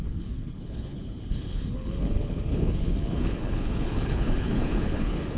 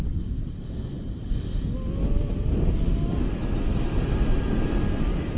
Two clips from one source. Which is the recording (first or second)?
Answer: second